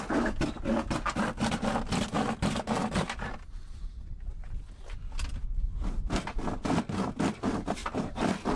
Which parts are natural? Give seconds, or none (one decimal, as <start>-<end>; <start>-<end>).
0.0-7.8

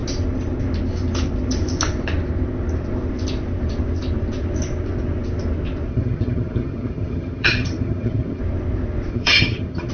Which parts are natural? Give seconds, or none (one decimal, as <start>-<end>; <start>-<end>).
0.0-5.9; 8.4-9.1

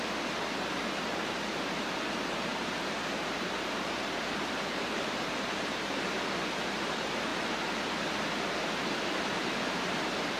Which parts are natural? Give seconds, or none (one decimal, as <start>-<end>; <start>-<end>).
7.3-8.6

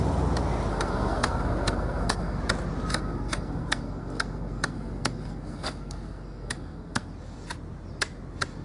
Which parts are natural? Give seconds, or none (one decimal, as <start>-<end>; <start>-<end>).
0.0-0.7; 2.4-2.9; 7.1-8.6

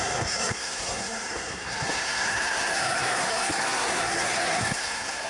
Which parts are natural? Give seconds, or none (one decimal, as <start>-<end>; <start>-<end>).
none

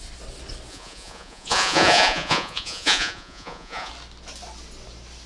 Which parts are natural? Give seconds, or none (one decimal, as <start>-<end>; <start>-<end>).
0.0-0.7; 3.9-5.3

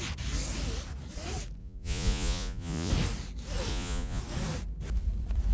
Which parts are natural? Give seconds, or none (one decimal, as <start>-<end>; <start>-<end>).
0.0-1.6; 2.9-3.7; 4.2-5.5

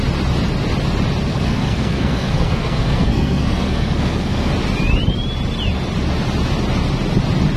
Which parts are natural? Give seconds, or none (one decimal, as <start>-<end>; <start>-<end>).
0.0-1.3; 4.5-7.6